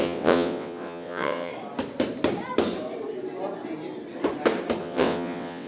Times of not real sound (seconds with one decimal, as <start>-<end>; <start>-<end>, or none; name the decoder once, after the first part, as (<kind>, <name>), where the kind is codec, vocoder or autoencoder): 0.0-1.5 (vocoder, WaveNeXt); 4.8-5.7